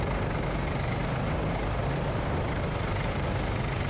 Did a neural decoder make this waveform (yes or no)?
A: no